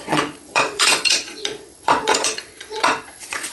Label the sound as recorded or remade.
remade